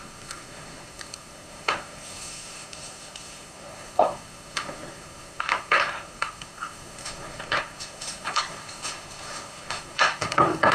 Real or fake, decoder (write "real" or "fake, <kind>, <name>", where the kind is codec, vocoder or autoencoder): fake, codec, SNAC